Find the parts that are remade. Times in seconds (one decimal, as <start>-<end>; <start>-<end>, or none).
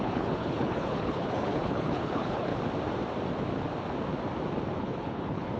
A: 0.0-2.5; 4.8-5.6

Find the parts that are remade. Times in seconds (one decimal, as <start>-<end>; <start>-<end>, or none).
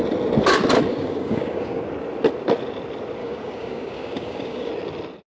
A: 0.9-1.8; 3.2-4.7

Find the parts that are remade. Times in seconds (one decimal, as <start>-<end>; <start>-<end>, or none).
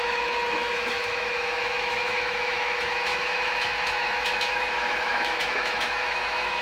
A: 0.0-6.6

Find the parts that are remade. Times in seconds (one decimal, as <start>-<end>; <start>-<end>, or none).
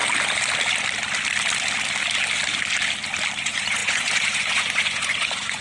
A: 3.4-5.6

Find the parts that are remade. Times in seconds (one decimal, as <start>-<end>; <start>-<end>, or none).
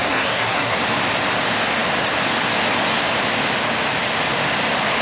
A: 0.0-0.8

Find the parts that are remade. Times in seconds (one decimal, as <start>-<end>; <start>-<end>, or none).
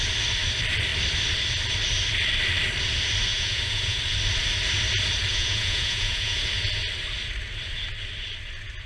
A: 3.3-4.0; 5.3-6.5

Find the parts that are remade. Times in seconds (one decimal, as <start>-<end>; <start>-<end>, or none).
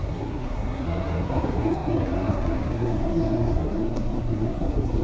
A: 0.0-5.0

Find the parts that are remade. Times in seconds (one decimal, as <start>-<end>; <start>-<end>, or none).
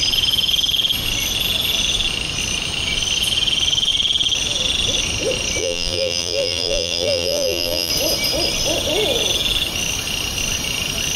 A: 5.6-7.9